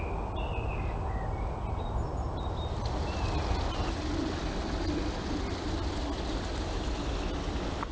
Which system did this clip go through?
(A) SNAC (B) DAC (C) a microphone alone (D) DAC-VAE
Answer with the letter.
C